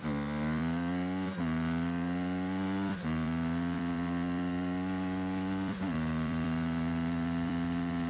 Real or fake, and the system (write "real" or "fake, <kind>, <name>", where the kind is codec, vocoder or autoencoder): fake, vocoder, BigVGAN v2